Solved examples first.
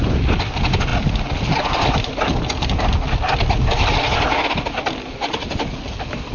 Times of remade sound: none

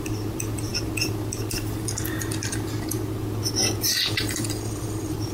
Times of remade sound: none

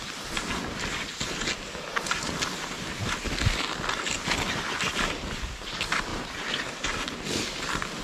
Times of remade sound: 6.1-8.0 (vocoder, BigVGAN v2)

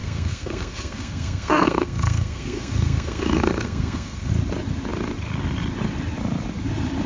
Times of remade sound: 0.0-4.3 (codec, SNAC)

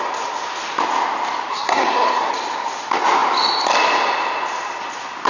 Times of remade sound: 1.5-2.3 (codec, SNAC)

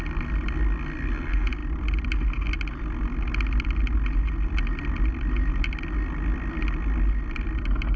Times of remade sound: none